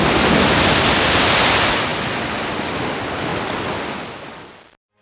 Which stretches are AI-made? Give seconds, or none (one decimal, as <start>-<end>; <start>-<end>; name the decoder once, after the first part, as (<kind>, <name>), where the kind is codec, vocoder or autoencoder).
none